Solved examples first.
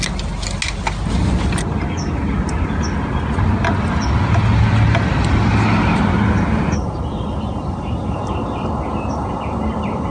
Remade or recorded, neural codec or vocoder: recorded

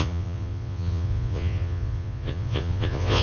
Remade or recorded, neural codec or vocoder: remade, vocoder, Vocos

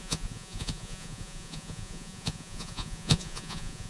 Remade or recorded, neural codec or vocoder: remade, vocoder, Vocos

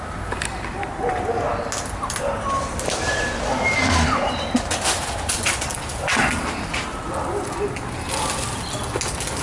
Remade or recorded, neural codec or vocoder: recorded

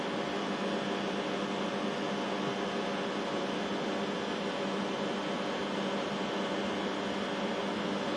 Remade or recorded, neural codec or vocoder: recorded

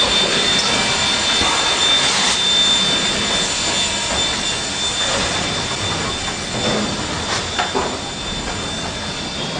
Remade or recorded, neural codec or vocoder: recorded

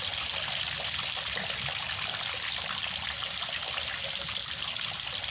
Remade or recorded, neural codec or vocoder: recorded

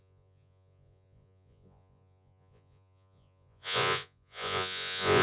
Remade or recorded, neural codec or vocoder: remade, vocoder, Vocos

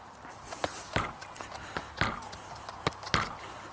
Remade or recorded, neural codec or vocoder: recorded